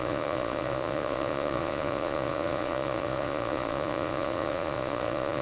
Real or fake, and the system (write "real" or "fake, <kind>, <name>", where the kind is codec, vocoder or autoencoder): fake, vocoder, Vocos